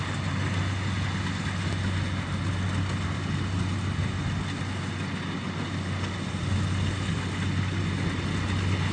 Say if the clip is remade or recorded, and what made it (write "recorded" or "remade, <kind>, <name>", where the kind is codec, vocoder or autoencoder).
recorded